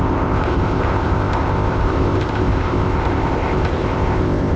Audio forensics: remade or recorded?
remade